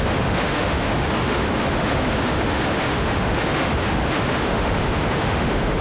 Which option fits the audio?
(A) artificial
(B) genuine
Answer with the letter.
A